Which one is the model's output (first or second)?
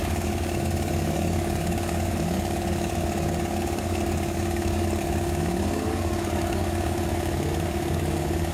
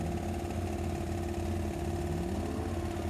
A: first